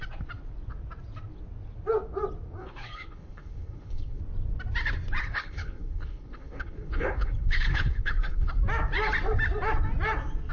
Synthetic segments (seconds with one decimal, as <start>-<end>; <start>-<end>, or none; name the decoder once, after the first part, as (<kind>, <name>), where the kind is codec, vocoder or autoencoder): 2.6-4.2 (codec, HILCodec); 5.2-8.5